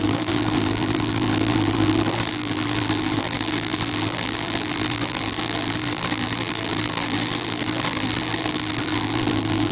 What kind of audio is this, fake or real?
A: fake